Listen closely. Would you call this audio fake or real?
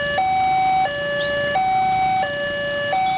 real